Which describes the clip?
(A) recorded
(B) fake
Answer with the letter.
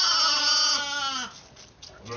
A